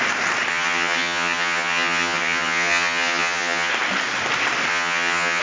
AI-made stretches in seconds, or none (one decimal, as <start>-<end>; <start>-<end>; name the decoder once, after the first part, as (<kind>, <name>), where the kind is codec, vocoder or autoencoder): 0.5-3.7 (vocoder, HiFi-GAN); 4.7-5.4

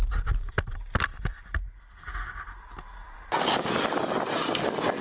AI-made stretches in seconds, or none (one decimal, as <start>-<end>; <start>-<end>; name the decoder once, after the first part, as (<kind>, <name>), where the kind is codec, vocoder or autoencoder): none